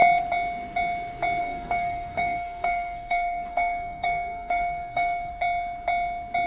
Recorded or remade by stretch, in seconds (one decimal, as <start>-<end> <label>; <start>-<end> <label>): 0.0-1.4 recorded; 1.4-5.3 remade; 5.3-6.5 recorded